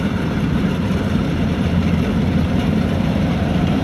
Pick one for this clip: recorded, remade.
remade